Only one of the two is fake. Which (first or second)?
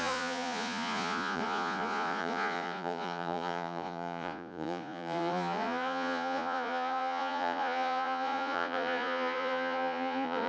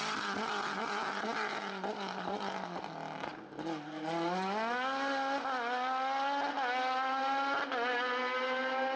first